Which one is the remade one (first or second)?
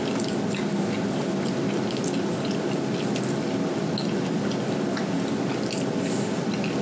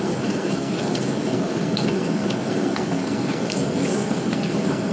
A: second